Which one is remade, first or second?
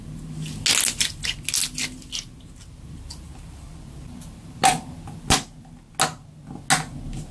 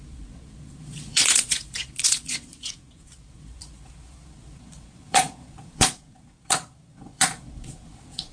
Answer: second